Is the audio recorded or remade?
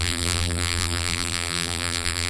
remade